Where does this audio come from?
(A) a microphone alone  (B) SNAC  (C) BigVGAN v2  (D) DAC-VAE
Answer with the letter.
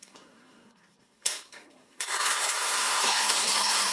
B